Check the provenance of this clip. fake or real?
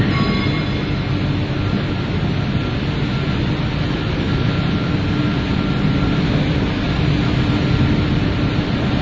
real